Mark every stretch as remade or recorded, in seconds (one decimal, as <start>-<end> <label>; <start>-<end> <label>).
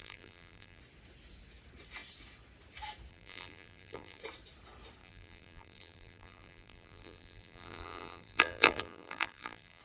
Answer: 0.0-0.8 remade; 0.8-3.1 recorded; 3.1-4.2 remade; 4.2-5.0 recorded; 5.0-9.8 remade